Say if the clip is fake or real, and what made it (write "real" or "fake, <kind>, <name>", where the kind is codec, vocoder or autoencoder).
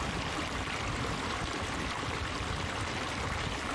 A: fake, vocoder, BigVGAN v2